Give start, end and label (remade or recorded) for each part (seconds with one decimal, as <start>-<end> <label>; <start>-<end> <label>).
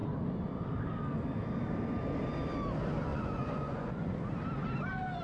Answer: 0.0-3.1 recorded; 3.1-4.2 remade; 4.2-5.2 recorded